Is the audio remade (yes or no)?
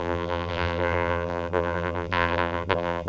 yes